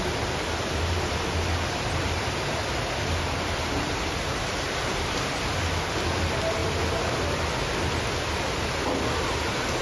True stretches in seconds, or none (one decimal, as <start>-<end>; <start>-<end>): 0.0-9.8

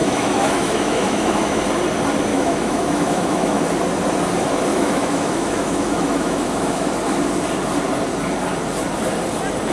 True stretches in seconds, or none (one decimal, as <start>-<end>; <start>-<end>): 1.6-2.3; 3.6-4.7; 6.9-9.7

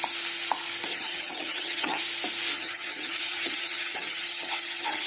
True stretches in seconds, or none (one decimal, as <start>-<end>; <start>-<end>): 0.0-0.9; 2.0-2.6

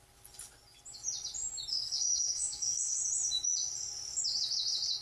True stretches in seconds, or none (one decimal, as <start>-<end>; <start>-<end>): 0.0-1.7; 3.0-5.0